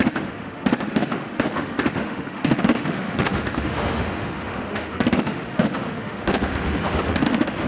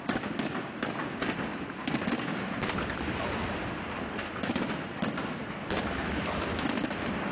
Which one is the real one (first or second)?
second